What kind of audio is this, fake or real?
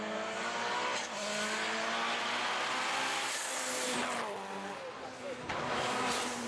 real